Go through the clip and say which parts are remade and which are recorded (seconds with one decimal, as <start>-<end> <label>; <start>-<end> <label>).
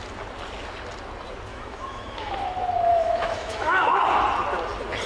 0.0-1.5 recorded; 1.5-2.3 remade; 2.3-2.9 recorded; 2.9-4.0 remade; 4.0-5.1 recorded